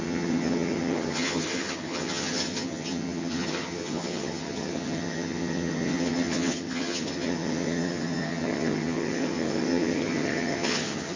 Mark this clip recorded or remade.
remade